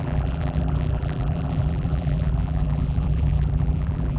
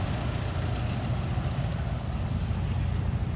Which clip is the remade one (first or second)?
first